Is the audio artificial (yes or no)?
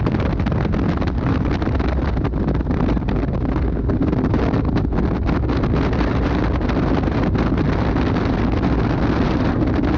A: no